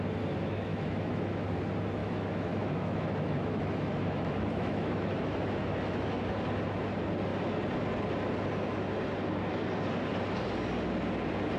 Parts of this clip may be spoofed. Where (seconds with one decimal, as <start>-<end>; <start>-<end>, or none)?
0.7-1.6; 2.0-6.2